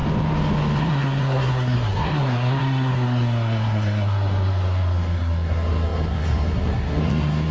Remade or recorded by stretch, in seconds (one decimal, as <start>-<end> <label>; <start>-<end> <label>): 0.0-0.8 recorded; 0.8-7.5 remade